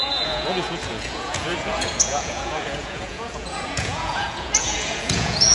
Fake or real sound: fake